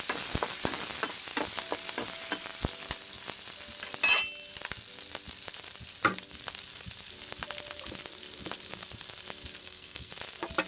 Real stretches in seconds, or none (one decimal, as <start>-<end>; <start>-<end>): 0.0-9.6; 10.1-10.7